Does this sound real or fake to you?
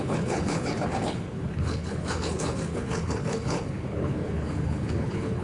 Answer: fake